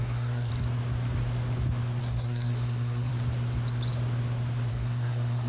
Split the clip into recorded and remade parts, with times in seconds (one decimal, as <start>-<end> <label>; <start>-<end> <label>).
0.0-0.5 remade; 0.5-2.0 recorded; 2.0-3.1 remade; 3.1-4.7 recorded; 4.7-5.5 remade